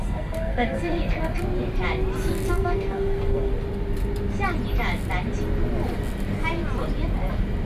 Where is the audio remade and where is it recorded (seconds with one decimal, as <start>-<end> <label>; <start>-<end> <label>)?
0.0-1.3 remade; 1.3-2.5 recorded; 2.5-3.5 remade; 3.5-7.7 recorded